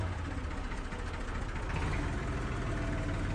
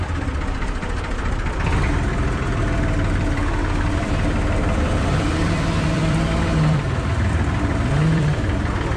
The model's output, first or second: second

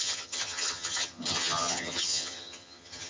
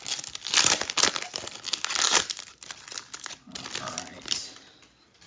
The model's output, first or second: first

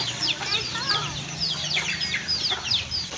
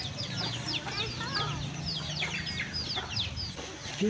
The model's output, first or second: first